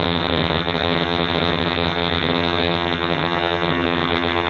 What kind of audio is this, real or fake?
fake